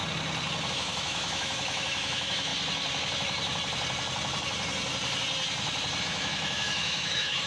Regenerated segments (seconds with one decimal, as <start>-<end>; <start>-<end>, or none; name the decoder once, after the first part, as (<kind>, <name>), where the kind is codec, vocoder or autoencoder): 0.7-2.5 (autoencoder, DAC-VAE); 6.0-7.5